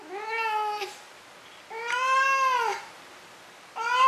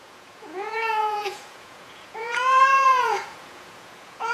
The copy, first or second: second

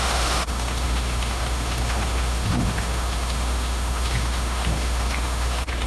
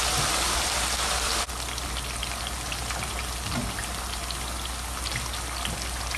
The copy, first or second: first